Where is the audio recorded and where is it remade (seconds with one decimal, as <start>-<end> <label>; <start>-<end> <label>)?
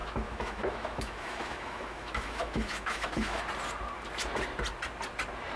0.0-3.4 remade; 3.4-5.6 recorded